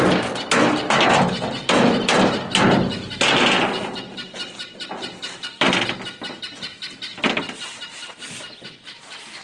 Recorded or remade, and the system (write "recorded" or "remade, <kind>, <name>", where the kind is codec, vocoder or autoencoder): recorded